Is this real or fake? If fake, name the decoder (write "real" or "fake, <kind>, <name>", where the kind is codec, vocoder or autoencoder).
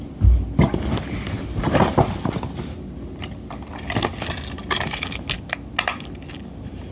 real